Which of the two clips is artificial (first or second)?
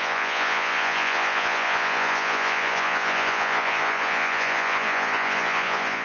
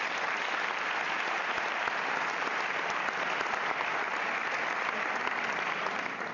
first